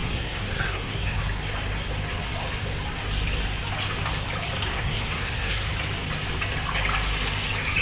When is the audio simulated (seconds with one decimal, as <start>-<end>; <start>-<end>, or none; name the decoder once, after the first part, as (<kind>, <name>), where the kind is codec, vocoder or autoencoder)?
0.0-1.2 (codec, SNAC); 4.7-5.7